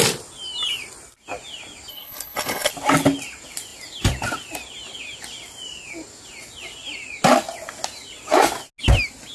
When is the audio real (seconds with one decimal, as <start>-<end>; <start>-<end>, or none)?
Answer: 0.0-1.9; 2.7-9.3